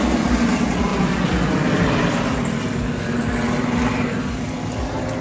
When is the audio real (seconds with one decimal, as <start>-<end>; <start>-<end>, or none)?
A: 0.0-5.2